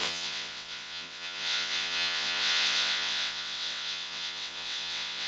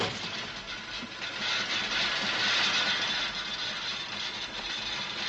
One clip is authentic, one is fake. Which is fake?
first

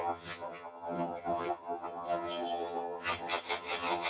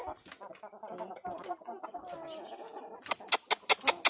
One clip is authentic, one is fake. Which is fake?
first